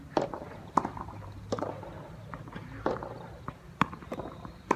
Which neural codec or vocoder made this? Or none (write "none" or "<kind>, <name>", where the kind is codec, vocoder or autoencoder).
vocoder, BigVGAN v2